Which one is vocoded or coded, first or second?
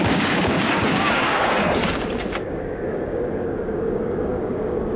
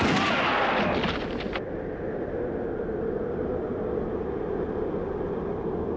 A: first